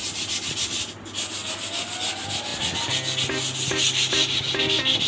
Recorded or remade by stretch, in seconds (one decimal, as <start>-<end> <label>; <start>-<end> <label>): 0.0-5.1 recorded